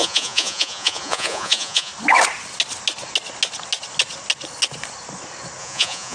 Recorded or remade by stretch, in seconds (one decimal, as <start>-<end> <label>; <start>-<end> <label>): 0.0-1.9 remade; 1.9-5.6 recorded; 5.6-6.1 remade